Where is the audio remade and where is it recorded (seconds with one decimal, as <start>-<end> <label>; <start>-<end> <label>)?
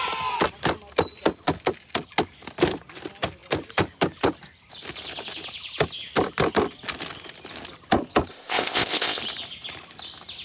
0.0-8.3 recorded; 8.3-9.2 remade; 9.2-10.4 recorded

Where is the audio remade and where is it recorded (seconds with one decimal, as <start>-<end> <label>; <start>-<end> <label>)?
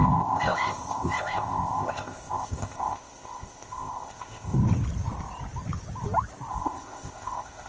0.0-4.6 remade; 4.6-6.5 recorded; 6.5-7.7 remade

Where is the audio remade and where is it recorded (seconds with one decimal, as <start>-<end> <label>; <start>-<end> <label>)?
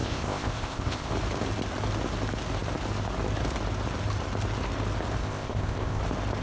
0.0-1.1 remade; 1.1-5.2 recorded; 5.2-6.0 remade; 6.0-6.4 recorded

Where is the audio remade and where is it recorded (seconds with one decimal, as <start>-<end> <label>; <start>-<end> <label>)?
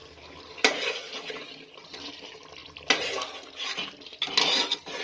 0.0-5.0 recorded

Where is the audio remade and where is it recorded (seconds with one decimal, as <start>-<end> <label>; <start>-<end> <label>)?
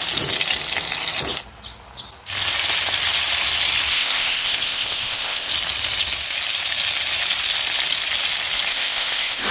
0.0-3.9 recorded; 3.9-5.5 remade; 5.5-8.7 recorded; 8.7-9.5 remade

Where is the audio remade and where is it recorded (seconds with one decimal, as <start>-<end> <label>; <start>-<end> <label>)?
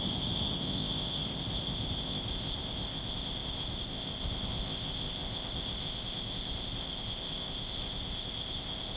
0.0-9.0 remade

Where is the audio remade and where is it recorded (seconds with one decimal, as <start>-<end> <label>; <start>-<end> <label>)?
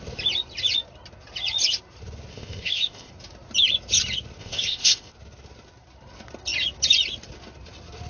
0.0-2.3 recorded; 2.3-3.1 remade; 3.1-4.4 recorded; 4.4-5.1 remade; 5.1-8.1 recorded